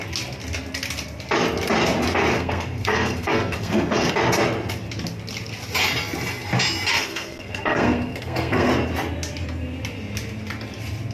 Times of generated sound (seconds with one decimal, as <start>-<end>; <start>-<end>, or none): 2.3-4.1; 6.9-8.7